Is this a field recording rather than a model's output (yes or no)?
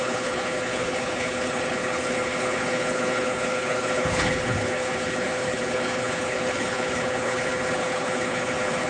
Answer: no